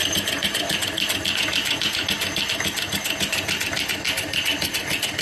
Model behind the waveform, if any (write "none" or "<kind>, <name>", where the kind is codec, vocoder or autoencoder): none